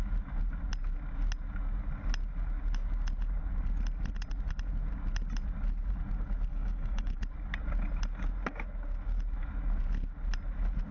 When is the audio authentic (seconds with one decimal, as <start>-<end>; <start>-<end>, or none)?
0.0-6.5; 7.2-10.9